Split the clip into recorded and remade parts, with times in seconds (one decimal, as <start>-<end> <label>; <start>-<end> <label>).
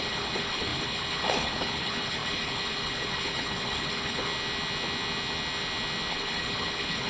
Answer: 0.0-4.3 remade; 4.3-6.1 recorded; 6.1-7.1 remade